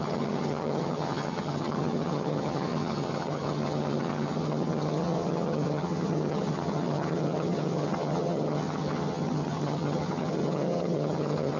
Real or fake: fake